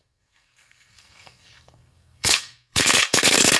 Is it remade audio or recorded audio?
remade